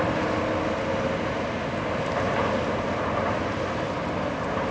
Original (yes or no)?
yes